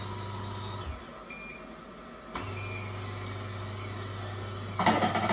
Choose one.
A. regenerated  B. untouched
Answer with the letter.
B